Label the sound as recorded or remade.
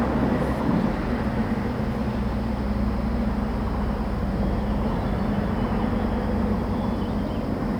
recorded